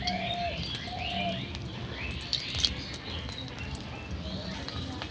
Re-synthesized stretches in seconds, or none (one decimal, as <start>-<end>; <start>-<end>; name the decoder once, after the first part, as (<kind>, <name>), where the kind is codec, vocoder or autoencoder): none